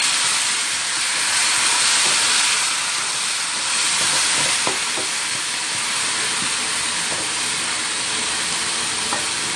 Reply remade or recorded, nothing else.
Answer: recorded